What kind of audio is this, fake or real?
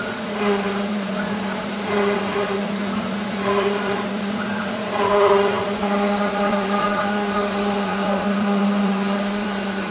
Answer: fake